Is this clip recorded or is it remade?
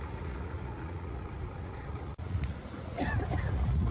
remade